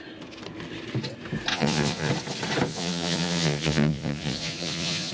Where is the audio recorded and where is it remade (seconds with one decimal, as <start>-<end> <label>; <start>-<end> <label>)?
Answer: 0.0-1.5 recorded; 1.5-2.1 remade; 2.1-2.7 recorded; 2.7-5.1 remade